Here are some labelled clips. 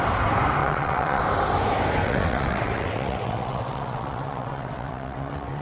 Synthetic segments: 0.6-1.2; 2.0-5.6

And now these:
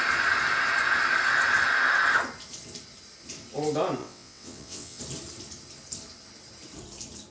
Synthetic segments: 4.0-5.0